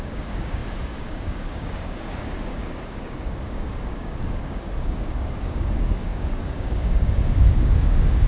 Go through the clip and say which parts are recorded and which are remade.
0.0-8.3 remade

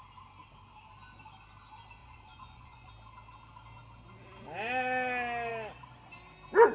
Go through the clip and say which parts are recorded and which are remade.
0.0-2.0 recorded; 2.0-2.9 remade; 2.9-6.7 recorded

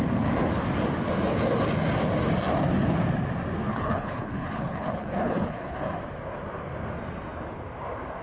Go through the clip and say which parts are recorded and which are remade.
0.0-3.7 recorded; 3.7-5.8 remade; 5.8-8.2 recorded

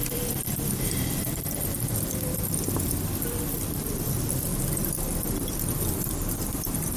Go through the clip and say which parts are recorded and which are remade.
0.0-4.5 remade; 4.5-5.9 recorded; 5.9-7.0 remade

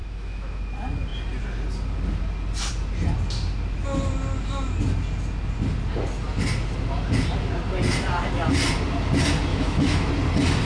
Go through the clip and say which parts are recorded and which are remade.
0.0-0.6 remade; 0.6-9.5 recorded; 9.5-10.1 remade; 10.1-10.6 recorded